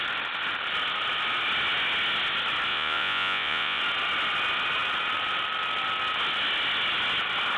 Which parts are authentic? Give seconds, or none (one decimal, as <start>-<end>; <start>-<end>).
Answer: 0.0-2.7; 3.8-7.6